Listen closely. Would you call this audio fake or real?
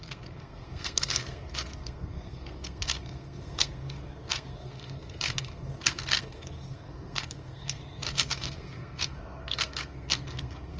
fake